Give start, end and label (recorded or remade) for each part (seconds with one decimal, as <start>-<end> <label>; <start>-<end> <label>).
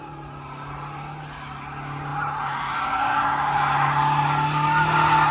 0.0-5.3 recorded